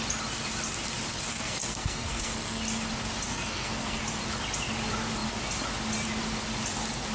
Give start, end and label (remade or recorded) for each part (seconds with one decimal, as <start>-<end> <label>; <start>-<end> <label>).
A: 0.0-1.3 recorded; 1.3-2.6 remade; 2.6-3.3 recorded; 3.3-4.0 remade; 4.0-7.1 recorded